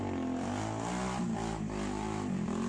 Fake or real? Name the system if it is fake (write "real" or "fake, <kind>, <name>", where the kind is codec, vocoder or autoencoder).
real